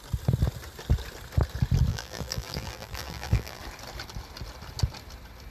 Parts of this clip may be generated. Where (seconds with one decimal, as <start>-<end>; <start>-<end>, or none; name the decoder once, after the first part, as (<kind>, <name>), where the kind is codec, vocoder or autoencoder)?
1.9-3.6 (vocoder, BigVGAN v2)